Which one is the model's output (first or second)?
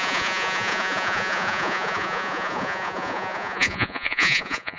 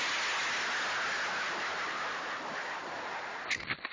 first